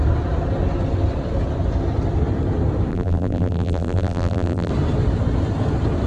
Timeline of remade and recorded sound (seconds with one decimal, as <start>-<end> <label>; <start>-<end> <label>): 0.0-2.9 recorded; 2.9-4.7 remade; 4.7-6.1 recorded